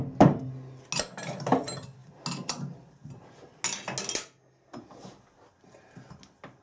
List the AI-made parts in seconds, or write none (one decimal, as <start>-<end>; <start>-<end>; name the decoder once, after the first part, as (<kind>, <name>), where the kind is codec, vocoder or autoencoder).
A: none